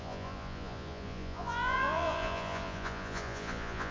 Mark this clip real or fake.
fake